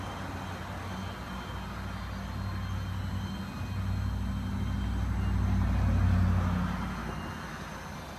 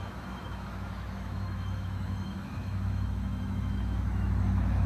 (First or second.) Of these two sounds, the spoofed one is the second